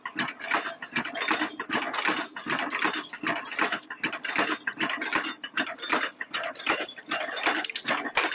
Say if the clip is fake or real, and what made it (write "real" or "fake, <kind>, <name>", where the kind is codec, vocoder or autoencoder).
real